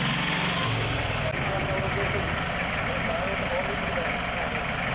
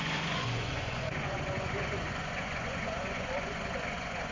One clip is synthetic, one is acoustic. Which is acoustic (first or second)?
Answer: first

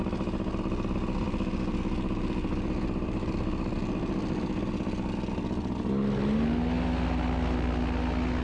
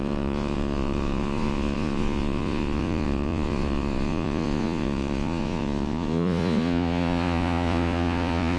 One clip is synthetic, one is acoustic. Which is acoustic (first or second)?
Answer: first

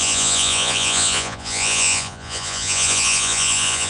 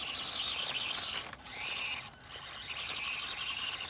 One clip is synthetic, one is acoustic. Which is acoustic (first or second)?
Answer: second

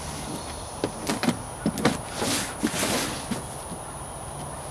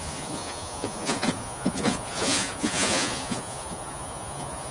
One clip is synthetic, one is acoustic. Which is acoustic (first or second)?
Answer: first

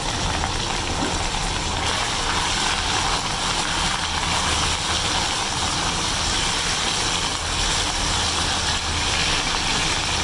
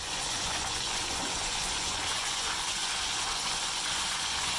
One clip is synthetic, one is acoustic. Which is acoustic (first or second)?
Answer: first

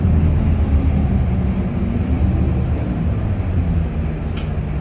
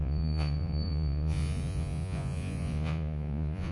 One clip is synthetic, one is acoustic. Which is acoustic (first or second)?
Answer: first